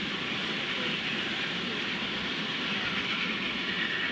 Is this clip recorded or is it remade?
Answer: remade